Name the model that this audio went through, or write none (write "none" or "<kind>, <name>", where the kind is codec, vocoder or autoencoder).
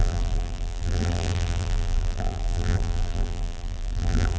vocoder, BigVGAN v2